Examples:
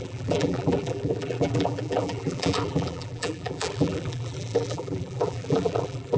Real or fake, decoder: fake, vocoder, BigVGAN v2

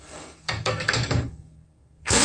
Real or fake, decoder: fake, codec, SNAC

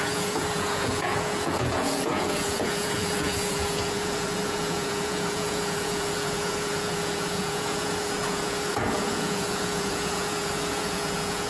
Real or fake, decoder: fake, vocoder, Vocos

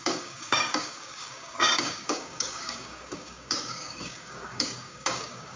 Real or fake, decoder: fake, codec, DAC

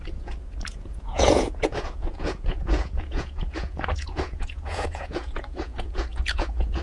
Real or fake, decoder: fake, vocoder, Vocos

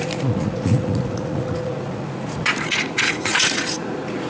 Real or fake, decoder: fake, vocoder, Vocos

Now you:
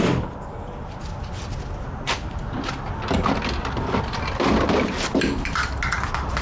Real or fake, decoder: real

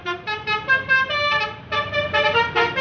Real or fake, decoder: real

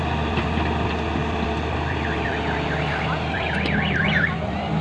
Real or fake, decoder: real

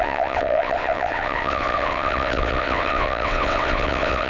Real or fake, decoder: fake, vocoder, WaveNeXt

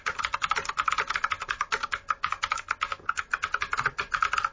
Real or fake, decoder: real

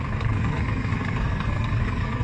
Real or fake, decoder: fake, codec, SNAC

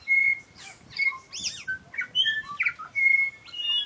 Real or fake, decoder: real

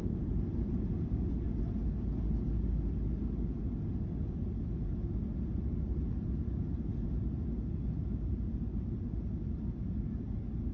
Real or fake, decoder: real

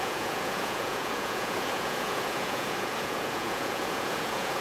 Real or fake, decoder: fake, vocoder, Vocos